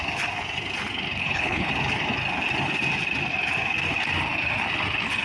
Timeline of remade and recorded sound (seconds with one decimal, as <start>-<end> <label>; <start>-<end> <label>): 0.0-1.2 recorded; 1.2-1.7 remade; 1.7-5.2 recorded